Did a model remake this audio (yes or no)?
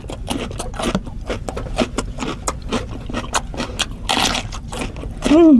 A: no